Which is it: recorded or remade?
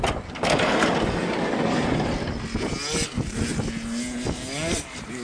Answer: recorded